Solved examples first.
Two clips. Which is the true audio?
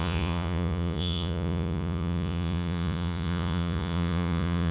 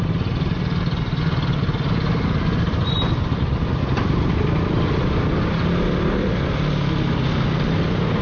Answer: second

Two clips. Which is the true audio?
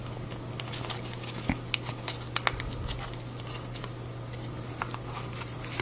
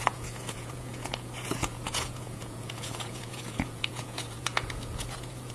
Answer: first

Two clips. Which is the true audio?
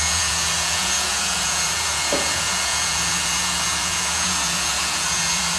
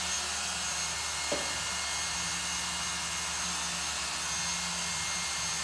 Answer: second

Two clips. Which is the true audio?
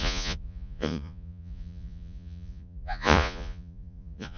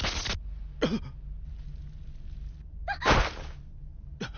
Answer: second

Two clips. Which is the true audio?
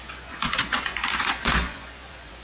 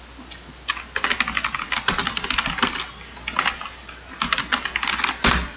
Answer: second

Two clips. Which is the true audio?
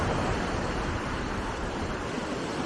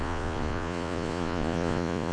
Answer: first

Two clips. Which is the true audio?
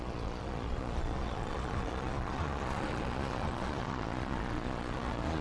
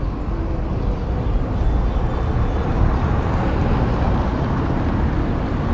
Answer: second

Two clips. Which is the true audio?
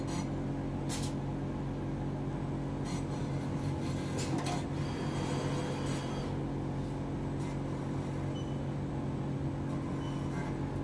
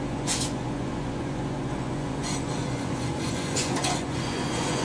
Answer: first